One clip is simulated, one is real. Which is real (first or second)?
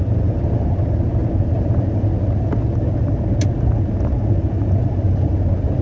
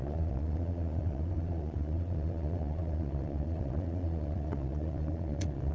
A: first